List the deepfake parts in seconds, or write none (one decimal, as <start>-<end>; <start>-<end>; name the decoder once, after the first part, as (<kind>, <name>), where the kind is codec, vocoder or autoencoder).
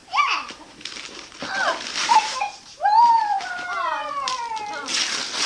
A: 0.0-1.5 (vocoder, BigVGAN v2); 2.0-4.4